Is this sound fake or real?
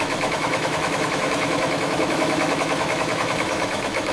fake